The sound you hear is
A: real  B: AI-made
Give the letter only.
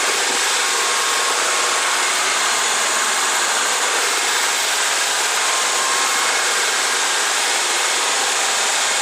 B